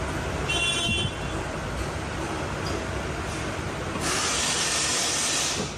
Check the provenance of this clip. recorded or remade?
recorded